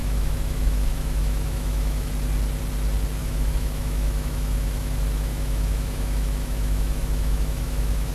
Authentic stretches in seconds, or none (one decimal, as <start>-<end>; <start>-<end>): 2.1-3.2